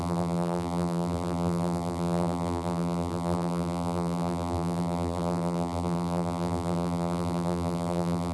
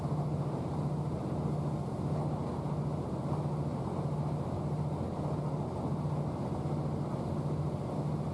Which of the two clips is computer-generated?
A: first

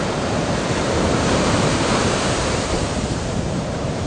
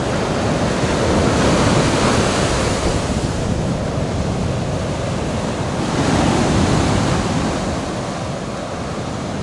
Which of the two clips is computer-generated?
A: first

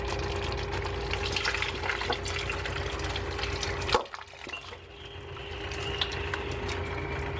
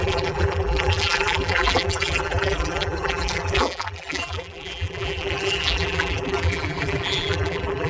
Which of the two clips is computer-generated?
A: second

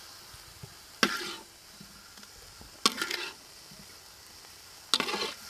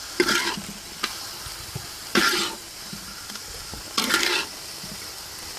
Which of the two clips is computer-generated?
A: second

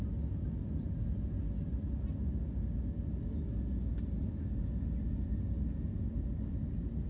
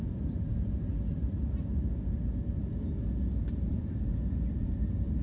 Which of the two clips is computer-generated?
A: second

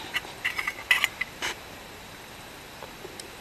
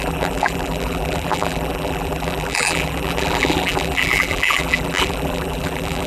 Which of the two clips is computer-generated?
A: second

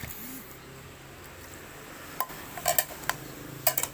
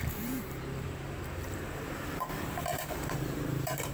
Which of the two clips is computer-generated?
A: second